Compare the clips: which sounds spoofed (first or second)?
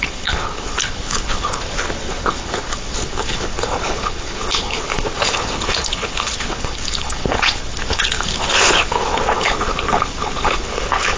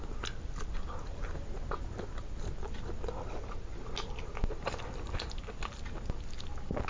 first